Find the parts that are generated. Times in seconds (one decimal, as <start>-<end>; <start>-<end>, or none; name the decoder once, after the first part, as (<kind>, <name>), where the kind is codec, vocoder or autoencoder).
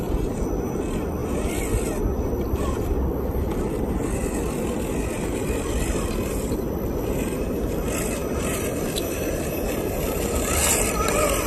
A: none